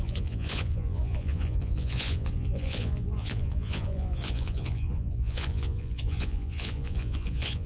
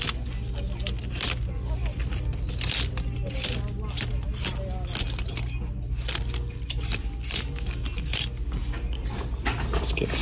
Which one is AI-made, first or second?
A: first